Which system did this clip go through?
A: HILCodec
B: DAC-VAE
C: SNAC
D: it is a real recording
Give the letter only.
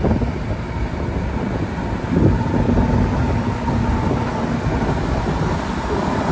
D